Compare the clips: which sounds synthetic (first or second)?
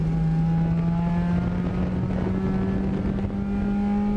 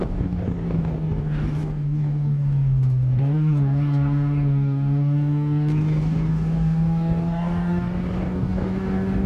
second